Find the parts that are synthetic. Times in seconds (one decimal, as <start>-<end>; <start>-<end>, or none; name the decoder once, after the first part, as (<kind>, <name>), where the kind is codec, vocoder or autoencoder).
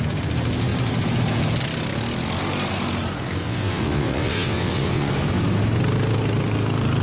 3.4-5.1 (vocoder, WaveNeXt)